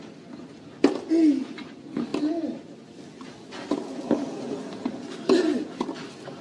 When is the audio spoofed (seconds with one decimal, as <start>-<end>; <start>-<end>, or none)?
none